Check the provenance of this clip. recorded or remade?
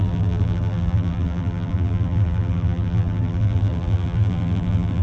remade